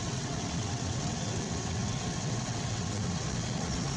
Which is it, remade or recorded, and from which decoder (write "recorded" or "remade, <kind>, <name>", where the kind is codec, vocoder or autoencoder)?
remade, vocoder, WaveNeXt